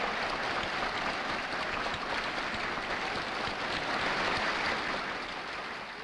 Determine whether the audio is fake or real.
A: real